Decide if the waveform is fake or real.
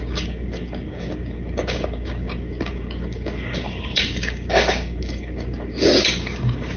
fake